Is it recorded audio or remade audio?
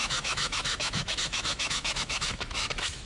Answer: remade